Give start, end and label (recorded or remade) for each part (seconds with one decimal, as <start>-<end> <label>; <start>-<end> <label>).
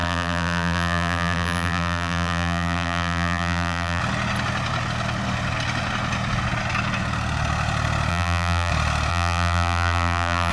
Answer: 0.0-4.0 remade; 4.0-8.1 recorded; 8.1-8.7 remade; 8.7-9.1 recorded; 9.1-10.5 remade